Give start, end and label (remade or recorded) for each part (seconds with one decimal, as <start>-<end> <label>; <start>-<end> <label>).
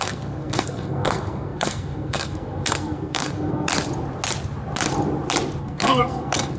0.0-3.7 remade; 3.7-5.6 recorded; 5.6-6.6 remade